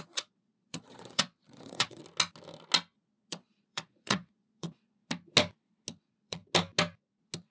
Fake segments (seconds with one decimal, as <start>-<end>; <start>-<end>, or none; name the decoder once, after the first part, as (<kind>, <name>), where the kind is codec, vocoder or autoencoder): 0.0-2.0 (vocoder, Vocos); 3.3-5.0; 6.0-6.4